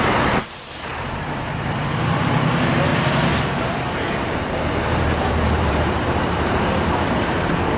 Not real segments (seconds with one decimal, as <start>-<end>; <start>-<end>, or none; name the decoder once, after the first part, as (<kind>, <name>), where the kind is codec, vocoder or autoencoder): 0.0-7.8 (vocoder, BigVGAN v2)

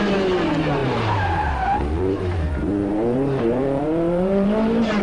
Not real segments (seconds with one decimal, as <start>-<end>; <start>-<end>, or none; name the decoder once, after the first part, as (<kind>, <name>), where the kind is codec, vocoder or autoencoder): 0.0-5.0 (vocoder, BigVGAN v2)

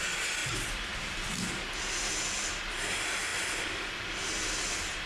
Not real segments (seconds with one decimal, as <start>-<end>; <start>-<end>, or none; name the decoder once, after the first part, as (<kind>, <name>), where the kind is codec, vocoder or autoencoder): 0.4-2.1 (vocoder, BigVGAN v2)

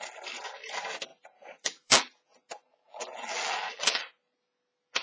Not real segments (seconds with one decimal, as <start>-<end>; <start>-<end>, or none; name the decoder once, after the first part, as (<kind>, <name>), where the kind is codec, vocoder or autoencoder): 1.1-4.0 (vocoder, BigVGAN v2)

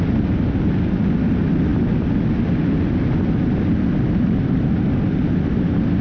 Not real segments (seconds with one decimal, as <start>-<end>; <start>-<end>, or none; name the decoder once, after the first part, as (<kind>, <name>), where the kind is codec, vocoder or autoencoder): none

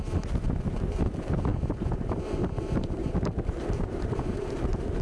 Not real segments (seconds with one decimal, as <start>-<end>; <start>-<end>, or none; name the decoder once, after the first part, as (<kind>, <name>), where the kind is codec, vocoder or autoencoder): 1.5-4.5 (vocoder, BigVGAN v2)

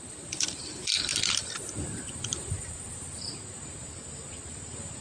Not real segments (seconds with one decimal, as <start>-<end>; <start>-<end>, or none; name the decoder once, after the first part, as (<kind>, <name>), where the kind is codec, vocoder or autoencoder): 0.0-5.0 (vocoder, BigVGAN v2)

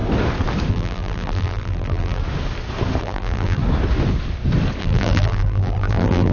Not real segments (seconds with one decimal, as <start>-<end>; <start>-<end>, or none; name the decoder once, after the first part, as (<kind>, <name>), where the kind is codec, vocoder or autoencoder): 0.7-2.2 (vocoder, BigVGAN v2); 3.0-3.6; 4.8-6.3